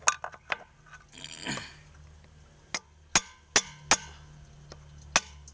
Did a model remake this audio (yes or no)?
no